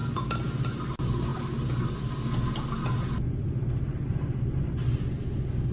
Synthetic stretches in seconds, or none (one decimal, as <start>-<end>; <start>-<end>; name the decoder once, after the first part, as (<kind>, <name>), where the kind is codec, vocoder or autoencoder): none